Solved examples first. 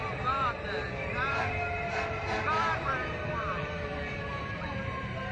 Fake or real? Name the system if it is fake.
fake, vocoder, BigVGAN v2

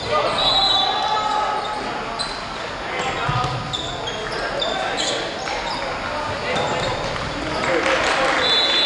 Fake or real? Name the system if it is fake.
real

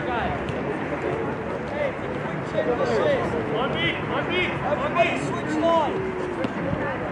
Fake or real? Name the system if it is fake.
real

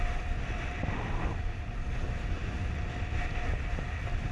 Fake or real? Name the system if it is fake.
real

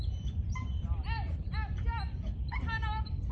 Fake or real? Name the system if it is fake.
fake, vocoder, BigVGAN v2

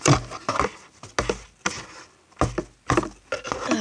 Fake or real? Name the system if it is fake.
real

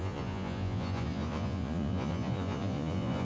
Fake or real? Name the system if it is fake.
fake, vocoder, Vocos